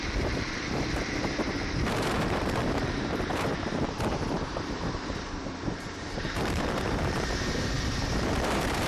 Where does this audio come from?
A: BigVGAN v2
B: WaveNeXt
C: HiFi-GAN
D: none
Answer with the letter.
A